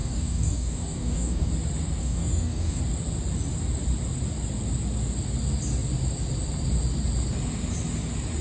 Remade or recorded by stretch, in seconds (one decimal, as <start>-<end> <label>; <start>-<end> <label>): 0.0-1.5 remade; 1.5-2.0 recorded; 2.0-2.8 remade; 2.8-8.4 recorded